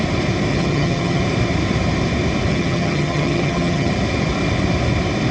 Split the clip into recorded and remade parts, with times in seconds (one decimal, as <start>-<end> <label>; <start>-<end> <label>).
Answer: 0.0-0.5 recorded; 0.5-1.2 remade; 1.2-2.5 recorded; 2.5-3.9 remade; 3.9-5.3 recorded

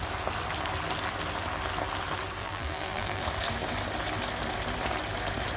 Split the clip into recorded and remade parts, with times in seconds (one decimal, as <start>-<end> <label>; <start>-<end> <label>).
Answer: 0.0-2.4 recorded; 2.4-3.2 remade; 3.2-5.6 recorded

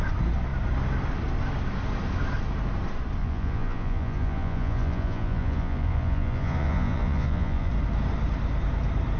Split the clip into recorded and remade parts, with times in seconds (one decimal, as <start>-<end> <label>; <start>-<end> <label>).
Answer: 0.0-3.2 recorded; 3.2-7.7 remade; 7.7-9.2 recorded

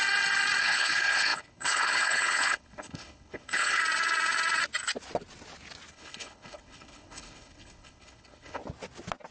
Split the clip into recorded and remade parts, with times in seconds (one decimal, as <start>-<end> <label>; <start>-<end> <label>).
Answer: 0.0-0.6 recorded; 0.6-3.8 remade; 3.8-5.9 recorded; 5.9-8.6 remade; 8.6-9.3 recorded

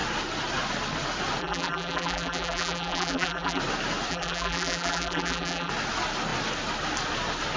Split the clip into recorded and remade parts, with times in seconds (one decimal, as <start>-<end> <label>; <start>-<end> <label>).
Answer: 0.0-1.4 recorded; 1.4-3.6 remade; 3.6-4.1 recorded; 4.1-5.7 remade; 5.7-7.6 recorded